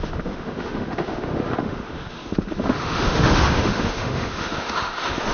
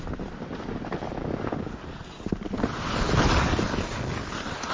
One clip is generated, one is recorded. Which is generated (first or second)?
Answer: first